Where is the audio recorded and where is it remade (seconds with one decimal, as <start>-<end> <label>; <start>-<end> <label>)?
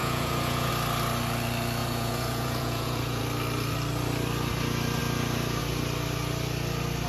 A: 0.0-0.7 remade; 0.7-1.8 recorded; 1.8-3.2 remade; 3.2-7.1 recorded